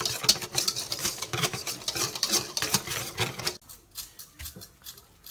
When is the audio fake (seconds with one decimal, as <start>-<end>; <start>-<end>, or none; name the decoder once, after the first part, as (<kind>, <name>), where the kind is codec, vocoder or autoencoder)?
1.0-1.6 (autoencoder, DAC-VAE)